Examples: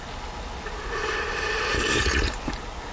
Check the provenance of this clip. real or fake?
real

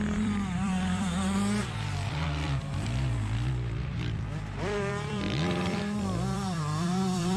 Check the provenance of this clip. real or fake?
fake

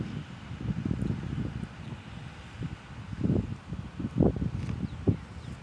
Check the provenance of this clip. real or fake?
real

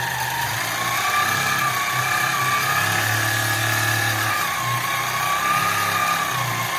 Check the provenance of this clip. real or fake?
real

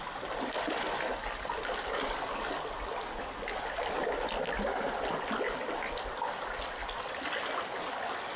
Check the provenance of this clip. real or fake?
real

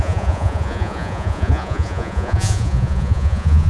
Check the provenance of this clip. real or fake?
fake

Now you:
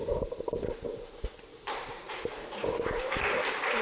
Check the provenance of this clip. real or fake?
fake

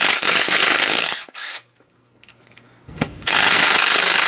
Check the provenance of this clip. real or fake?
fake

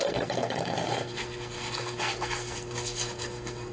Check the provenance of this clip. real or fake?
fake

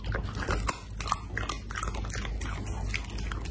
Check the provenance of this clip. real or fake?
real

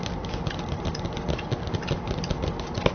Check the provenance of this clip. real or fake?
real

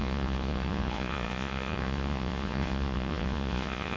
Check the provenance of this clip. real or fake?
fake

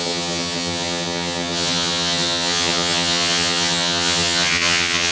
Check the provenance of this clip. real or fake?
fake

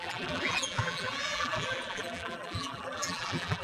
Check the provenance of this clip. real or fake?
fake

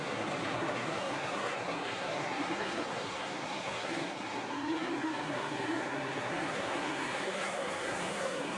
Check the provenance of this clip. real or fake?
fake